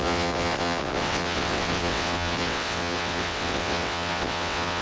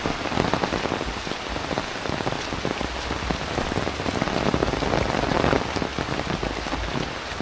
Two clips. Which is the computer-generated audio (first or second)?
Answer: first